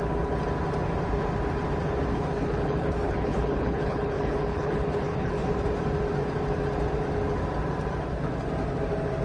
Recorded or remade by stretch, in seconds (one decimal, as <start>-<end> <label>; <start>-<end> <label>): 0.0-2.1 recorded; 2.1-5.5 remade; 5.5-9.2 recorded